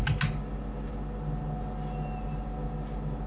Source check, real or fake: real